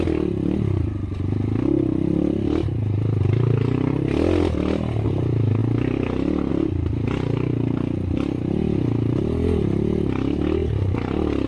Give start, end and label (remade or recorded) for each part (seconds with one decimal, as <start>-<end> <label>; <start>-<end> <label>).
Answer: 0.0-11.5 recorded